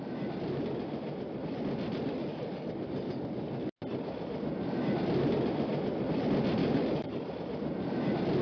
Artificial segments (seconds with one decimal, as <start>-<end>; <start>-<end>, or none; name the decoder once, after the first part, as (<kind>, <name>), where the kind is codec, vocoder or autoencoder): 2.2-2.7 (codec, DAC); 6.6-7.3